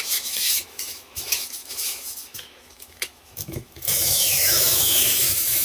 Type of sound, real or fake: fake